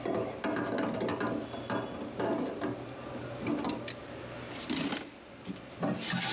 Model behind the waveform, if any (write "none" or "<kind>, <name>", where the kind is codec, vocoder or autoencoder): none